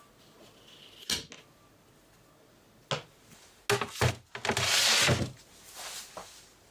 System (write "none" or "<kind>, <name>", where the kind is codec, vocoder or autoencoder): none